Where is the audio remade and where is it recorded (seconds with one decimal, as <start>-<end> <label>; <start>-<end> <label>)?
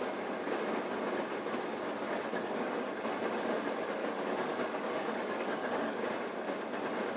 0.0-2.3 recorded; 2.3-2.9 remade; 2.9-4.0 recorded; 4.0-6.0 remade; 6.0-7.2 recorded